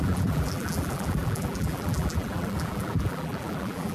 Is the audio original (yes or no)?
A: no